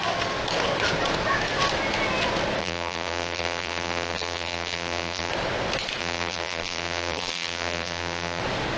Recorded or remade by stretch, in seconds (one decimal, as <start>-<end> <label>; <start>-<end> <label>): 0.0-2.6 recorded; 2.6-5.3 remade; 5.3-6.0 recorded; 6.0-8.4 remade; 8.4-8.8 recorded

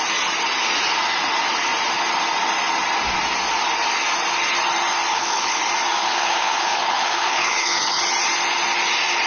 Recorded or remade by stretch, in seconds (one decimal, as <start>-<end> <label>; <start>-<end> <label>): 0.0-5.1 recorded; 5.1-5.6 remade; 5.6-6.0 recorded; 6.0-8.0 remade; 8.0-9.3 recorded

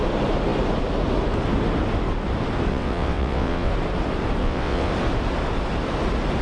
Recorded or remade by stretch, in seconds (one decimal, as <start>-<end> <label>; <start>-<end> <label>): 0.0-2.7 recorded; 2.7-3.7 remade; 3.7-4.4 recorded; 4.4-4.9 remade; 4.9-6.4 recorded